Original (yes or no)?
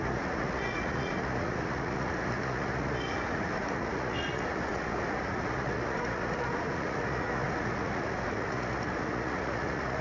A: no